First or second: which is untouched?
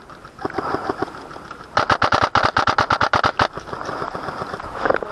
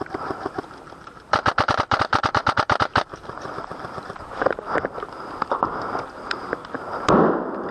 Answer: first